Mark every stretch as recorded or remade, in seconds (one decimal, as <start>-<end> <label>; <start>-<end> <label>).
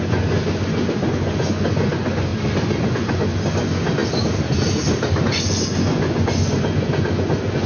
0.0-2.3 remade; 2.3-2.8 recorded; 2.8-4.0 remade; 4.0-5.2 recorded; 5.2-7.7 remade